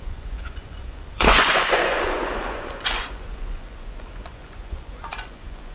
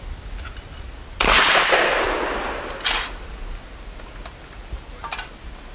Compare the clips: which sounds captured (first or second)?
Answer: second